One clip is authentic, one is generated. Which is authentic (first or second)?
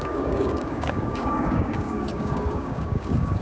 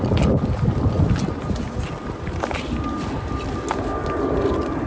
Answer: second